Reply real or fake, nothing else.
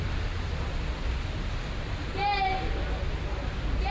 real